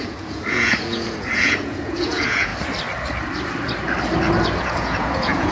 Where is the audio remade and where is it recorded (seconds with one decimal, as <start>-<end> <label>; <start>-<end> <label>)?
0.0-2.5 remade; 2.5-4.6 recorded; 4.6-5.5 remade